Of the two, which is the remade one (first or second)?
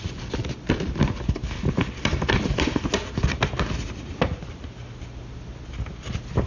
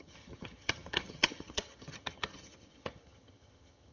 second